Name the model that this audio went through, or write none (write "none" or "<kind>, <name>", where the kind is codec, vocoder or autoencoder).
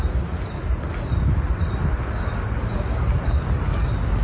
none